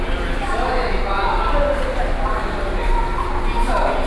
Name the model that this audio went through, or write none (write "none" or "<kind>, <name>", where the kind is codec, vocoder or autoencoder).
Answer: none